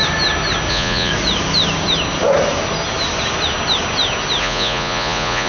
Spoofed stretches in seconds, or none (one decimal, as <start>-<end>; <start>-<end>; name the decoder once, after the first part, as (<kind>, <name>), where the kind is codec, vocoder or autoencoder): 0.7-1.1 (vocoder, Vocos); 4.4-5.5